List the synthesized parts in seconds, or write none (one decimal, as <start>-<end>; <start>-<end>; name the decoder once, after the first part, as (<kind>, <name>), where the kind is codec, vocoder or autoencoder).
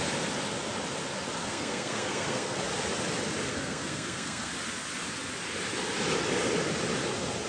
1.4-2.6 (codec, SNAC); 3.5-4.5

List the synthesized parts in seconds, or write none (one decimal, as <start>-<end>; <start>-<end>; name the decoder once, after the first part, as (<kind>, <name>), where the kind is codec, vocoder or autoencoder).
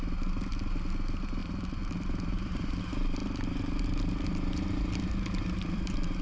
1.4-2.8 (vocoder, BigVGAN v2); 3.2-6.2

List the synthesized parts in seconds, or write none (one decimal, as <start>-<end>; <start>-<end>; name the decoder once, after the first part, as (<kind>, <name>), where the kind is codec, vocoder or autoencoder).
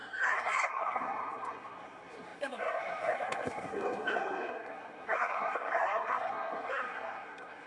0.0-7.7 (codec, SNAC)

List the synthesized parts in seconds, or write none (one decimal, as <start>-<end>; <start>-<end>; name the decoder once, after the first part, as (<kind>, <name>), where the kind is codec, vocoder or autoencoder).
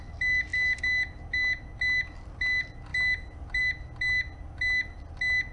none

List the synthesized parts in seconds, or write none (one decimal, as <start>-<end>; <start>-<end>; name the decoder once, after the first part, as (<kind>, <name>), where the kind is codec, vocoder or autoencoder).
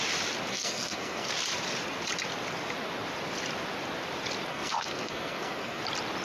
0.5-1.3 (codec, SNAC); 4.5-5.8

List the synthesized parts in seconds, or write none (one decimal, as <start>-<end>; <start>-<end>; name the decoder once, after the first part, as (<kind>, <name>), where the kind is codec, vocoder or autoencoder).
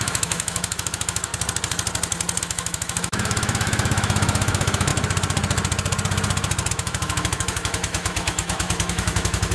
0.0-1.3 (autoencoder, DAC-VAE); 2.4-4.9; 6.7-9.5